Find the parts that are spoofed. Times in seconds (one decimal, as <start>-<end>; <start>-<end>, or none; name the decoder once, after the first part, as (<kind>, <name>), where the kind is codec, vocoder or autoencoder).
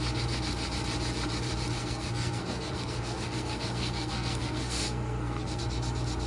1.8-5.6 (codec, SNAC)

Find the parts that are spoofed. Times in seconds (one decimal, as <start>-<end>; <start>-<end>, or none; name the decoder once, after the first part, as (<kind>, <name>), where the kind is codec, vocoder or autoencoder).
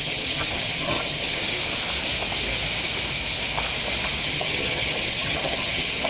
0.0-1.4 (vocoder, HiFi-GAN); 4.2-6.1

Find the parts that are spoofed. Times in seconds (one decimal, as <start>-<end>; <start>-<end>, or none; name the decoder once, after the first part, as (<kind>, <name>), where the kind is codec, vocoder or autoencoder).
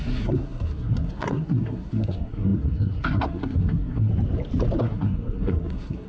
0.0-4.1 (codec, SNAC); 4.8-6.1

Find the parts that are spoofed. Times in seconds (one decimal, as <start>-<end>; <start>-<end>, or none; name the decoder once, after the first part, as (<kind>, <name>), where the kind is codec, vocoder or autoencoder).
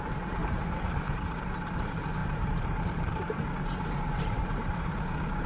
0.0-0.4 (vocoder, BigVGAN v2); 1.0-5.5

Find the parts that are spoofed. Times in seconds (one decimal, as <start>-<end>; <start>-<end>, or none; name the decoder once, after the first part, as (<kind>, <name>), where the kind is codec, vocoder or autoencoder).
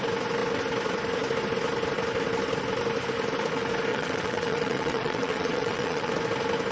3.9-6.1 (vocoder, WaveNeXt)